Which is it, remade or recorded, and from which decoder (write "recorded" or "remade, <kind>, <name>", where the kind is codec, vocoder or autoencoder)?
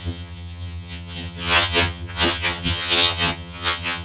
remade, vocoder, HiFi-GAN